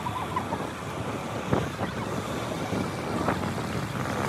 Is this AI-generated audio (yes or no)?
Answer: no